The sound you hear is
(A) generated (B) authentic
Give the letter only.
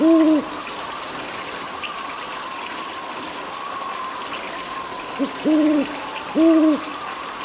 B